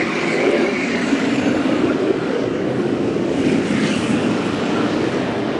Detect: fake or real fake